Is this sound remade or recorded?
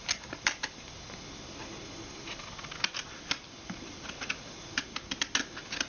recorded